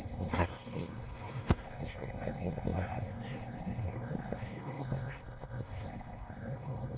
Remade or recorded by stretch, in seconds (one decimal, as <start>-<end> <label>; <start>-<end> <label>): 0.0-7.0 remade